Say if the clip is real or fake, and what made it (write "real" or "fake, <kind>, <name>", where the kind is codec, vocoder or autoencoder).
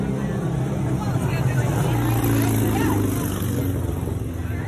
real